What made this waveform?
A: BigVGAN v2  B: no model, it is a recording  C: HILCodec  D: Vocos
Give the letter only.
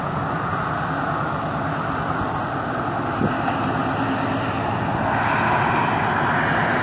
B